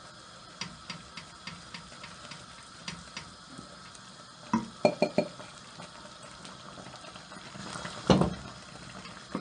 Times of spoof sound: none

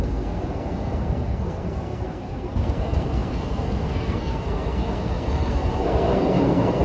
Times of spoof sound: 0.0-6.8 (codec, SNAC)

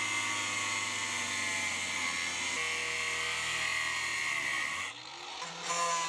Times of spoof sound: none

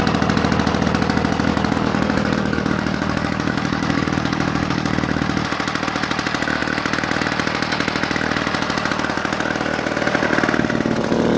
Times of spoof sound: 1.5-4.9 (codec, DAC)

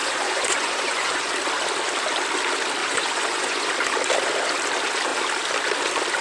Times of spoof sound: 0.0-1.3 (vocoder, Vocos); 2.8-3.7

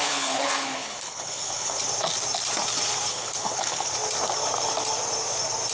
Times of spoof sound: 0.0-1.8 (codec, HILCodec); 3.1-3.9